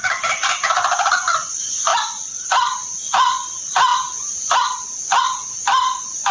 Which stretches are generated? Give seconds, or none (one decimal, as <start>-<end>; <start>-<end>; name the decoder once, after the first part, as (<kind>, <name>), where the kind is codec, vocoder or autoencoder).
none